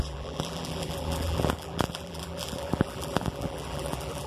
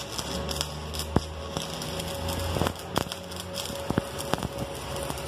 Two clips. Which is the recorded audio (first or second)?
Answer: second